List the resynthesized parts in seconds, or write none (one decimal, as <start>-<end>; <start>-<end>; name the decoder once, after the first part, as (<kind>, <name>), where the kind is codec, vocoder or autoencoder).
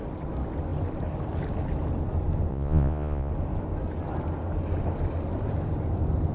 2.5-3.3 (vocoder, Vocos)